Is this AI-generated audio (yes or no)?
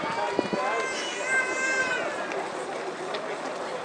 no